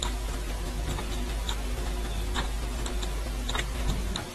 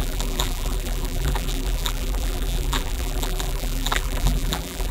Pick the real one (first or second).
first